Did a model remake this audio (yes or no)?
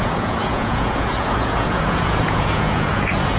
yes